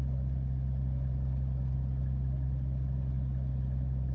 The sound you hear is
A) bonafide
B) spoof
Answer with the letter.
A